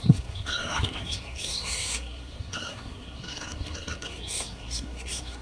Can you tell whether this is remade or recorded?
remade